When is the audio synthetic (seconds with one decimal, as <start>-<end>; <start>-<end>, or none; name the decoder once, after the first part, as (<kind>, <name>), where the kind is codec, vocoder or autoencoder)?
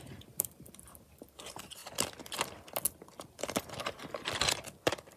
0.0-1.8 (vocoder, BigVGAN v2)